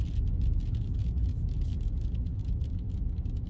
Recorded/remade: recorded